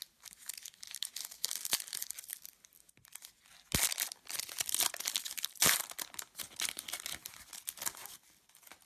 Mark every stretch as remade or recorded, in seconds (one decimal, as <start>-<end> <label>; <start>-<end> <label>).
0.0-1.2 recorded; 1.2-1.7 remade; 1.7-8.9 recorded